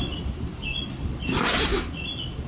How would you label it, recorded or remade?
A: recorded